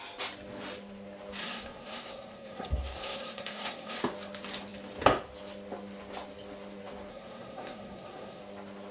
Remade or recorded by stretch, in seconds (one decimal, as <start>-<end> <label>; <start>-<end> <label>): 0.0-1.4 recorded; 1.4-4.0 remade; 4.0-7.1 recorded; 7.1-8.4 remade; 8.4-8.9 recorded

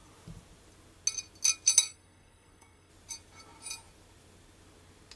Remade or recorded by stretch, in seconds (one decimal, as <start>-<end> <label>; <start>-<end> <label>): 0.0-1.8 recorded; 1.8-2.9 remade; 2.9-5.2 recorded